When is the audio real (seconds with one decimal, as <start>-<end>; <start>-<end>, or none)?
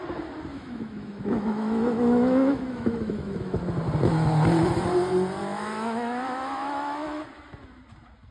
0.0-0.5; 3.6-5.4; 7.2-8.3